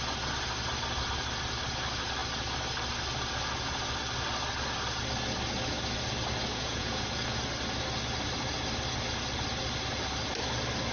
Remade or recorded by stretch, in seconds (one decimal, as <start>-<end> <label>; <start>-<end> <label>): 0.0-6.5 recorded; 6.5-7.1 remade; 7.1-10.9 recorded